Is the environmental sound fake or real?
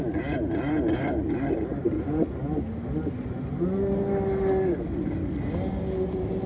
real